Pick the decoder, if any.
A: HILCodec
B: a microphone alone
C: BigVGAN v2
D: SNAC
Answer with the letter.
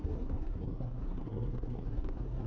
D